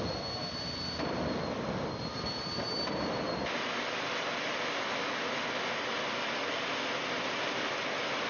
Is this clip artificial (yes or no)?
no